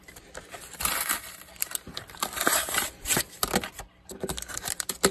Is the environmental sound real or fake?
fake